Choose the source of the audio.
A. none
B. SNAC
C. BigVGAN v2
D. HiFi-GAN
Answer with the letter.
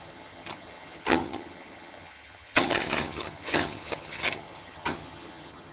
D